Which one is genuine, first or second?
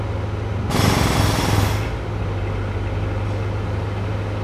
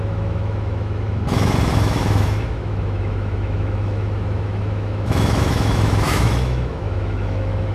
first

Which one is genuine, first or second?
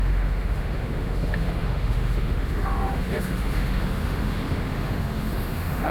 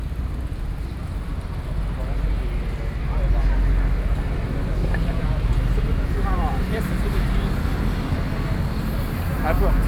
second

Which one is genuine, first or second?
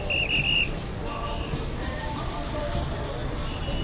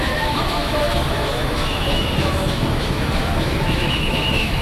first